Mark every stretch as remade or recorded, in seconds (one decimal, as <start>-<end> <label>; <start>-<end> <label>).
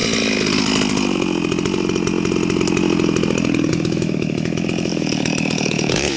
0.0-3.7 recorded; 3.7-6.2 remade